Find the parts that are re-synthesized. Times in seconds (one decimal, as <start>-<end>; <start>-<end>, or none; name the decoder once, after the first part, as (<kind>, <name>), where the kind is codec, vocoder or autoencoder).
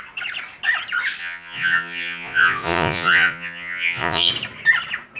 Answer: 1.2-4.3 (vocoder, Vocos)